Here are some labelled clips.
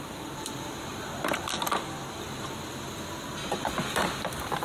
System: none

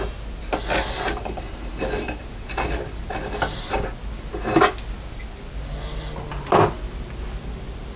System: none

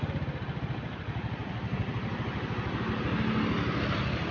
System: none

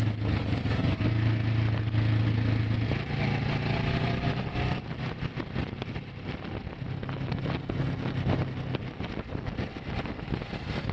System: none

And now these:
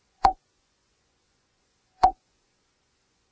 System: vocoder, Vocos